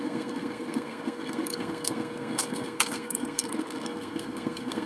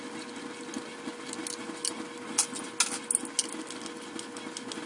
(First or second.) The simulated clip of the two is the first